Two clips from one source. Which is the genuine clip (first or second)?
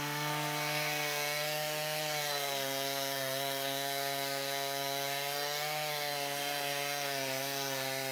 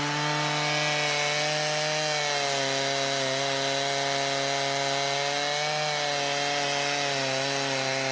second